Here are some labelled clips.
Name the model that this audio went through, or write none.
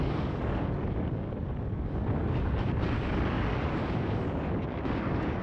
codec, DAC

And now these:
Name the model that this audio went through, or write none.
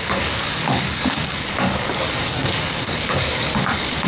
codec, DAC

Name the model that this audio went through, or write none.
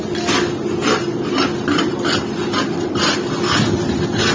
none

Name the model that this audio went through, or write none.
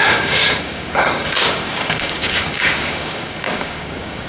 codec, DAC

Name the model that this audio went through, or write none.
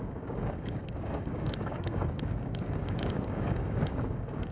codec, DAC